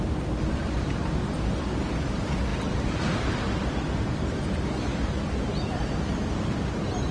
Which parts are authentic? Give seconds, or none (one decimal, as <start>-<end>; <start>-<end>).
1.0-2.1